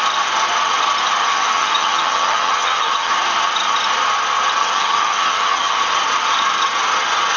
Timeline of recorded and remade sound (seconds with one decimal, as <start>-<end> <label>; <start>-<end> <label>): 0.0-1.2 recorded; 1.2-3.1 remade; 3.1-4.6 recorded; 4.6-5.8 remade; 5.8-7.4 recorded